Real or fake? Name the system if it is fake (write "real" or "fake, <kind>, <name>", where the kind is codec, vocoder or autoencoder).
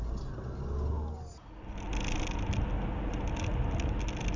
real